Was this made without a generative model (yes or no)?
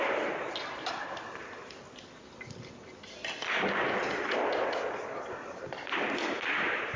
no